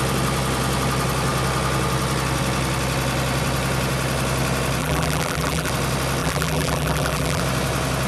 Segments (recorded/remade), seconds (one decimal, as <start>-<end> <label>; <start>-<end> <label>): 0.0-4.8 recorded; 4.8-5.7 remade; 5.7-6.2 recorded; 6.2-7.4 remade; 7.4-8.1 recorded